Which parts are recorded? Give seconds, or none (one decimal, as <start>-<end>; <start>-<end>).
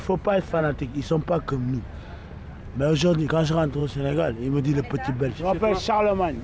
0.0-6.4